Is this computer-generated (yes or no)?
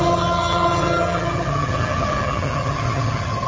yes